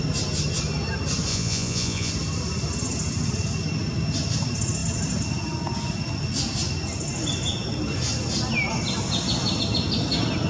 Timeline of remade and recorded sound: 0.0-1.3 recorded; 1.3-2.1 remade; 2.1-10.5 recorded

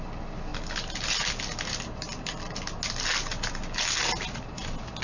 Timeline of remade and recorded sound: 0.0-5.0 recorded